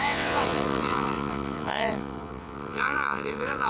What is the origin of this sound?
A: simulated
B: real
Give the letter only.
A